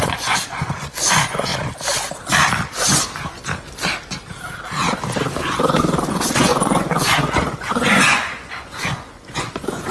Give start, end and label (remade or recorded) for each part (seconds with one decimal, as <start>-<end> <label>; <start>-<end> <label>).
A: 0.0-1.5 remade; 1.5-6.1 recorded; 6.1-9.9 remade